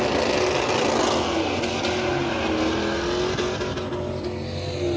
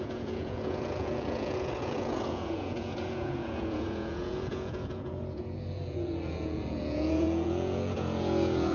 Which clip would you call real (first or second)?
first